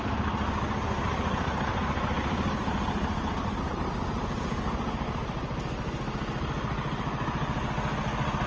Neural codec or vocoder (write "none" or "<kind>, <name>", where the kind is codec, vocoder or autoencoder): none